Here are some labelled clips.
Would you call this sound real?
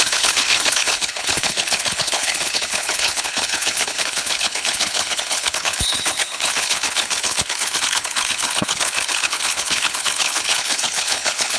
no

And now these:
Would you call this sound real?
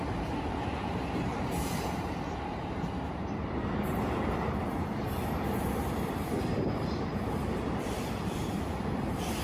no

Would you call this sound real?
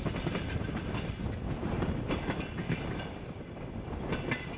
yes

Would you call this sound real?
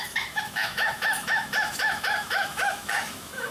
no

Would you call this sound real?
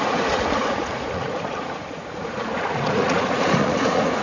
no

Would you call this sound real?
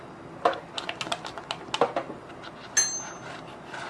yes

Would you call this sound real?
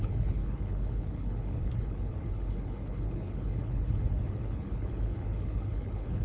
no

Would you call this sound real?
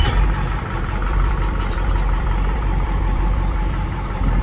no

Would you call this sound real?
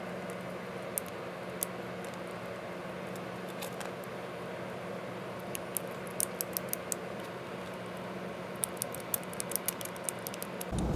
yes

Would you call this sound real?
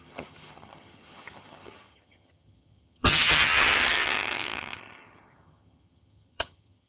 no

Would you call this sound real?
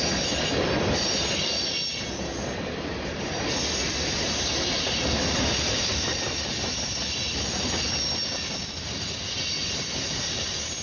yes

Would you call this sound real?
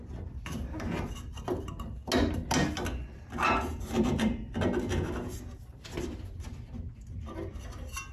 yes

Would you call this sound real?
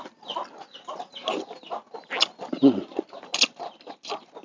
yes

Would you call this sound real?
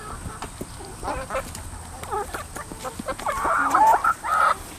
yes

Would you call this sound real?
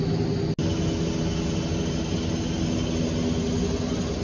yes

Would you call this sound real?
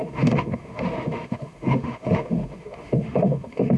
no